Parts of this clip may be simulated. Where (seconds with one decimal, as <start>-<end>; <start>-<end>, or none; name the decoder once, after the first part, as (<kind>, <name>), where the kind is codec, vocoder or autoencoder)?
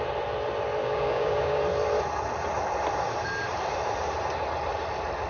0.8-1.6 (codec, DAC)